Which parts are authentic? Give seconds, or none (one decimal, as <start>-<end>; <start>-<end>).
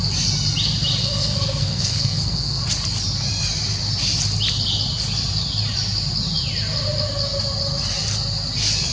0.0-1.0; 2.6-8.9